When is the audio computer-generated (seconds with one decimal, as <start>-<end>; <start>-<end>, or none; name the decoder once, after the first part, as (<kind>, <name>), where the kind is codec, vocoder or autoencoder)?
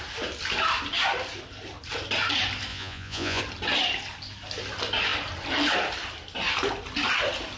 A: 2.7-3.4 (vocoder, Vocos)